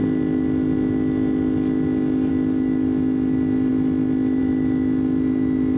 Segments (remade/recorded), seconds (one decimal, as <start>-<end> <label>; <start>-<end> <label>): 0.0-5.8 recorded